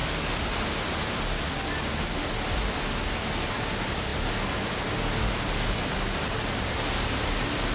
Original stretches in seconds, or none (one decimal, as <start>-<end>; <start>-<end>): 0.0-7.7